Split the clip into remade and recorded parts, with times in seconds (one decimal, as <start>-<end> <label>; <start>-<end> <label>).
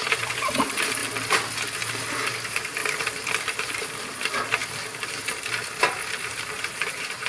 0.0-1.0 remade; 1.0-1.9 recorded; 1.9-2.8 remade; 2.8-3.6 recorded; 3.6-4.6 remade; 4.6-6.5 recorded; 6.5-7.3 remade